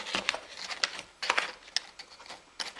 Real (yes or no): yes